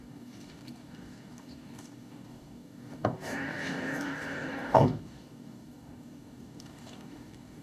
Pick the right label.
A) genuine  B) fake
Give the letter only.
B